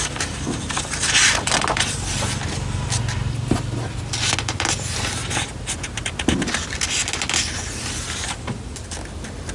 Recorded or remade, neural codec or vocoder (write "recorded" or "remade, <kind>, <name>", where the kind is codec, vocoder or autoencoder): recorded